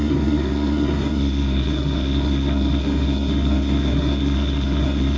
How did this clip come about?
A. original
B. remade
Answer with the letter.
B